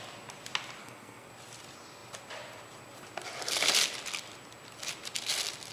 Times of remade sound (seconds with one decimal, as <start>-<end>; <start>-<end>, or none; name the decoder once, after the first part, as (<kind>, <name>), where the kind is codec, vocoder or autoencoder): 0.8-1.3 (codec, SNAC)